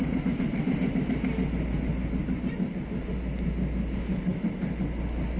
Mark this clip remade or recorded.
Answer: recorded